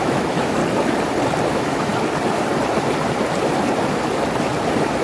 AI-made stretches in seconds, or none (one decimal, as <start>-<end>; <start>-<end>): 0.0-0.6; 1.5-1.9